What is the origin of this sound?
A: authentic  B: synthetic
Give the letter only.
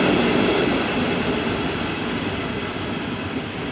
A